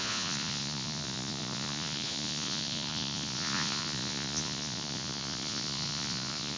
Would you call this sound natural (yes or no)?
no